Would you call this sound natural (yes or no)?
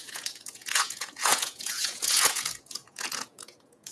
no